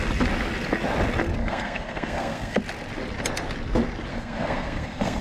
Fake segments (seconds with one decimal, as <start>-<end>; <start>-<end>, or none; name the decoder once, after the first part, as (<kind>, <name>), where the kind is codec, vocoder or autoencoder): 1.4-2.6 (codec, SNAC); 4.1-5.2